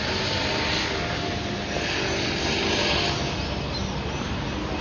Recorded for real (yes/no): yes